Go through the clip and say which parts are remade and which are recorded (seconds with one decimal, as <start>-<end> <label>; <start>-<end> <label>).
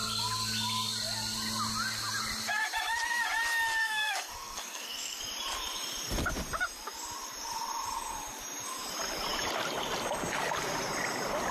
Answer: 0.0-3.8 recorded; 3.8-5.2 remade; 5.2-11.5 recorded